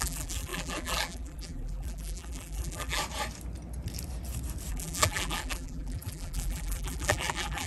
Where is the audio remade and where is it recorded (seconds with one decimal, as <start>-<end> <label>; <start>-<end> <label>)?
0.0-3.0 remade; 3.0-4.7 recorded; 4.7-7.7 remade